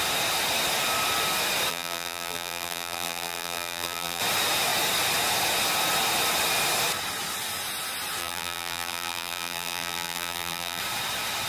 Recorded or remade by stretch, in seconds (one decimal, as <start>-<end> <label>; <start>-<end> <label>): 0.0-1.7 recorded; 1.7-4.2 remade; 4.2-8.2 recorded; 8.2-10.8 remade; 10.8-11.5 recorded